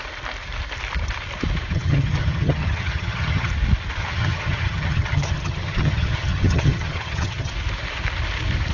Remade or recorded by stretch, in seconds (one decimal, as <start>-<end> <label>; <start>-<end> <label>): 0.0-1.7 recorded; 1.7-3.5 remade; 3.5-4.0 recorded; 4.0-7.5 remade; 7.5-8.7 recorded